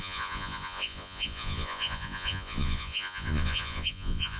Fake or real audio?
fake